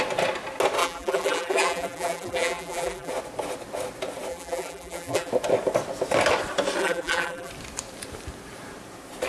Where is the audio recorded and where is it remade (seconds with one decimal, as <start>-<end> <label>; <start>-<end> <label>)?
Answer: 0.0-0.8 recorded; 0.8-3.1 remade; 3.1-4.3 recorded; 4.3-5.3 remade; 5.3-6.8 recorded; 6.8-7.5 remade; 7.5-9.3 recorded